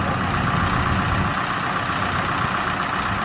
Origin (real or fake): real